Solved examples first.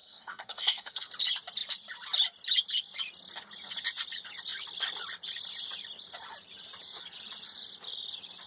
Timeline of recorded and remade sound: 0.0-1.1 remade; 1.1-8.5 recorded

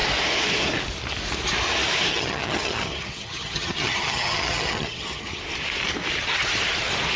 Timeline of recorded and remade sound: 0.0-2.1 recorded; 2.1-5.4 remade; 5.4-7.2 recorded

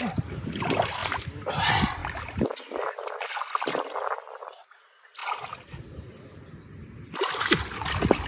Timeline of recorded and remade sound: 0.0-5.2 recorded; 5.2-6.1 remade; 6.1-8.3 recorded

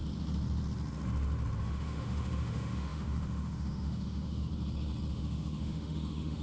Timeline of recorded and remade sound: 0.0-1.6 recorded; 1.6-4.5 remade; 4.5-5.1 recorded; 5.1-6.4 remade

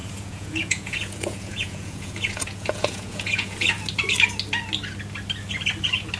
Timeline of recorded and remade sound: 0.0-3.7 remade; 3.7-6.2 recorded